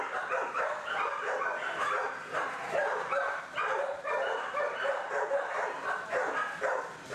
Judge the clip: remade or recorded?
remade